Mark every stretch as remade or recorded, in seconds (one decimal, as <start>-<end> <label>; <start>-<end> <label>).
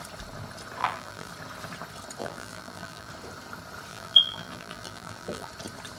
0.0-0.8 recorded; 0.8-1.3 remade; 1.3-2.2 recorded; 2.2-3.1 remade; 3.1-3.9 recorded; 3.9-5.5 remade; 5.5-6.0 recorded